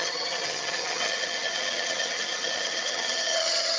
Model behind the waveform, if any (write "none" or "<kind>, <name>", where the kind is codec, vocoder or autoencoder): vocoder, HiFi-GAN